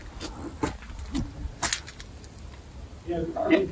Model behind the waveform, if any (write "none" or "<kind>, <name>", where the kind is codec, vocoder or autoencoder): none